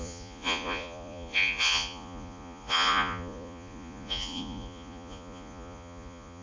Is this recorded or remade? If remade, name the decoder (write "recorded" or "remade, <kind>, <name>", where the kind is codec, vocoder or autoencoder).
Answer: remade, vocoder, Vocos